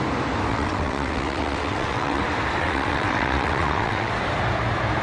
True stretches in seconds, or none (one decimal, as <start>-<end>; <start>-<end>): 0.0-0.5; 2.2-2.6; 4.1-5.0